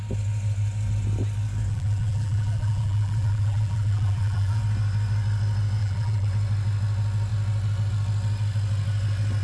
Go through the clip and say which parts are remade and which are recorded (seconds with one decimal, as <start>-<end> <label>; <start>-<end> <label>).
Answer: 0.0-1.7 recorded; 1.7-4.6 remade; 4.6-5.8 recorded; 5.8-6.3 remade; 6.3-9.4 recorded